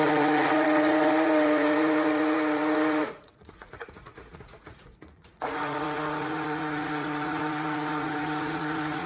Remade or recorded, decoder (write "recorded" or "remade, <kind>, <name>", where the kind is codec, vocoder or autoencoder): remade, vocoder, Vocos